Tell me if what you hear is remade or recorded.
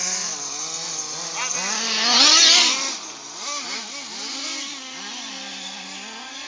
recorded